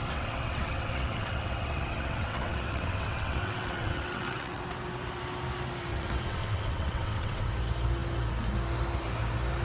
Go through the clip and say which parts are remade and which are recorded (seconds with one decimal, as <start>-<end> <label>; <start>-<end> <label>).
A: 0.0-4.6 remade; 4.6-5.9 recorded; 5.9-7.5 remade; 7.5-9.6 recorded